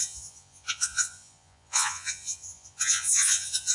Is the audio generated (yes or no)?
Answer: yes